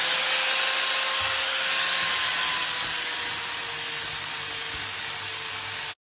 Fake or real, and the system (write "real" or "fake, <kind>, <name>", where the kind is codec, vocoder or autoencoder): real